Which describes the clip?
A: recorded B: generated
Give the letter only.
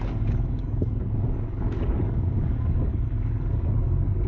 B